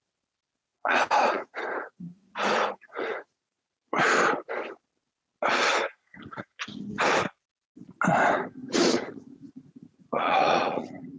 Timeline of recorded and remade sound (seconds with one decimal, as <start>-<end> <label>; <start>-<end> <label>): 0.0-0.7 recorded; 0.7-4.2 remade; 4.2-5.7 recorded; 5.7-6.8 remade; 6.8-8.6 recorded; 8.6-11.2 remade